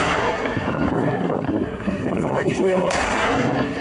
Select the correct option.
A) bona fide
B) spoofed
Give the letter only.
B